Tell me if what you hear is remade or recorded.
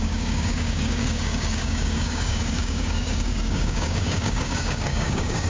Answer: remade